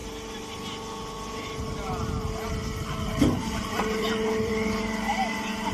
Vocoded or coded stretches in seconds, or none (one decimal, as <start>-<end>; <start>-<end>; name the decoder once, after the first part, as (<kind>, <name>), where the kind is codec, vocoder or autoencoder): 3.4-4.5 (vocoder, BigVGAN v2)